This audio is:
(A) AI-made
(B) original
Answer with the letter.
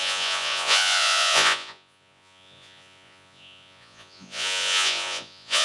A